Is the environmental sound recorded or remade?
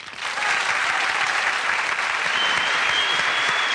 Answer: recorded